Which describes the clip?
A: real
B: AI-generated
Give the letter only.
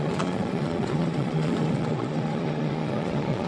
B